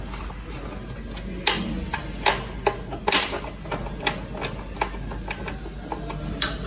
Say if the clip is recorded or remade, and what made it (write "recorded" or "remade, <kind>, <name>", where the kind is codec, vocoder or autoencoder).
recorded